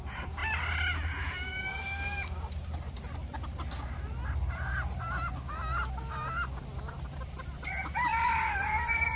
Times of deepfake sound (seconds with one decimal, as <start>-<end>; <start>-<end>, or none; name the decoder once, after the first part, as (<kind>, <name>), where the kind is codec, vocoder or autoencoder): none